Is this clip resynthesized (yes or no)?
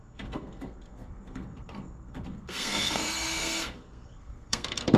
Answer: yes